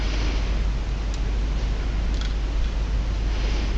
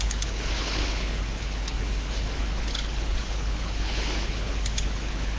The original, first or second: first